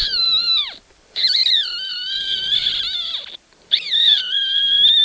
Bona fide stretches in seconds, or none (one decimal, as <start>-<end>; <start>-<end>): none